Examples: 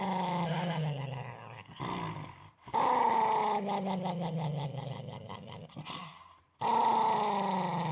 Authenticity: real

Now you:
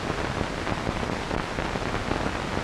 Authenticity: real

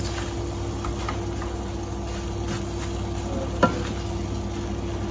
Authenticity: real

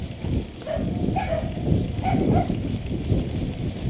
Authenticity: real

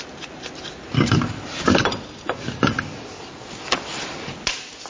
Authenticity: real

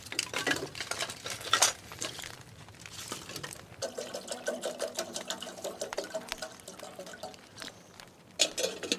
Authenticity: real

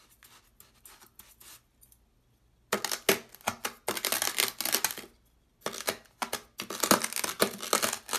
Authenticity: real